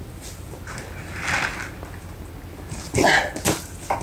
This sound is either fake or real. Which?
real